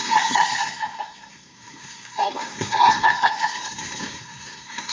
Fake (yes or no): yes